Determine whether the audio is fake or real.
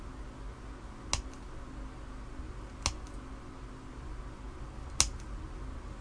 real